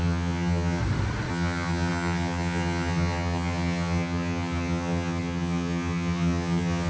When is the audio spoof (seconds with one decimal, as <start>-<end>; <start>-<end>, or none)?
0.0-0.8; 1.3-6.9